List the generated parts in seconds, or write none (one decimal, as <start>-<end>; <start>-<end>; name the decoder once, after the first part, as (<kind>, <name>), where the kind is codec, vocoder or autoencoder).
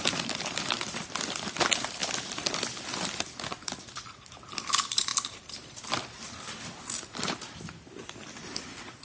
0.0-9.0 (vocoder, BigVGAN v2)